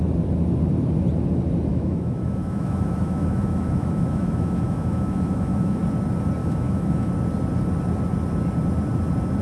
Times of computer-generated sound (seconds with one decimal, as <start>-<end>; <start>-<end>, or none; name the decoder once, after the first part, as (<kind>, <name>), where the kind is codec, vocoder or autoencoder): 1.7-5.8 (autoencoder, DAC-VAE); 6.4-7.1